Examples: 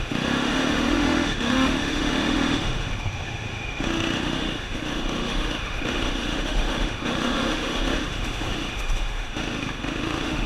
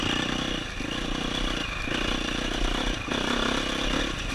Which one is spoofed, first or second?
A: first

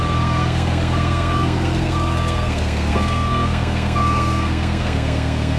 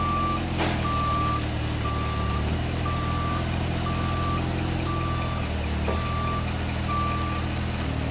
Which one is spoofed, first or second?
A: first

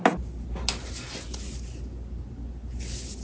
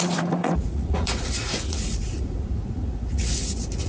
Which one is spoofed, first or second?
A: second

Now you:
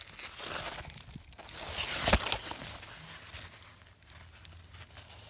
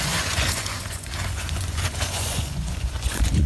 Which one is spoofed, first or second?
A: second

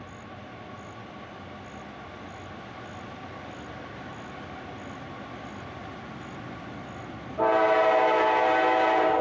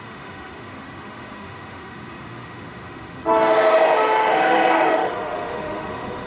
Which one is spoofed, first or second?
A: second